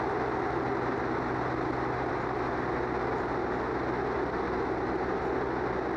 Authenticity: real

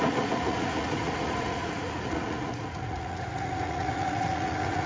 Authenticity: fake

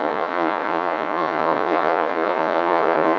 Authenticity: fake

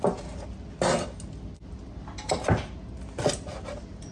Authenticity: real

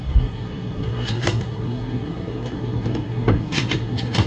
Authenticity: fake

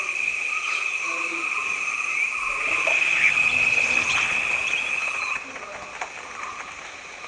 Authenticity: real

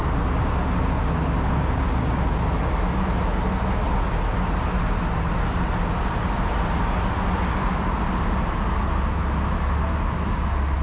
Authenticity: real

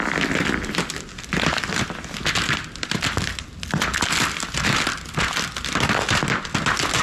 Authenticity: real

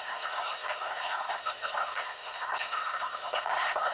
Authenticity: fake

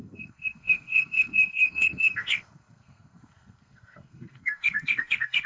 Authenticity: fake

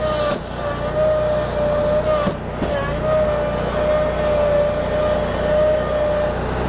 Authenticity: real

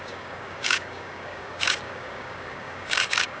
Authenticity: fake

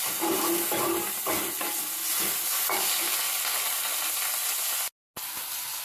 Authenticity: real